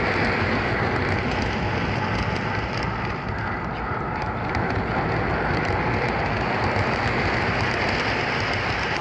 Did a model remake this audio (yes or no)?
no